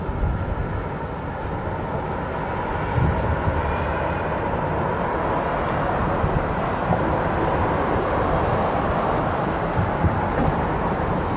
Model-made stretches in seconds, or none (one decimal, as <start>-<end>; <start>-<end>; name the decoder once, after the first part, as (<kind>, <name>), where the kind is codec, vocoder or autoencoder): 6.0-11.4 (vocoder, BigVGAN v2)